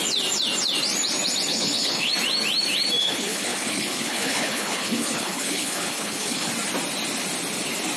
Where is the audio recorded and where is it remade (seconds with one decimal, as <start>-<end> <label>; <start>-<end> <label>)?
0.0-1.5 recorded; 1.5-2.1 remade; 2.1-3.0 recorded; 3.0-6.5 remade; 6.5-8.0 recorded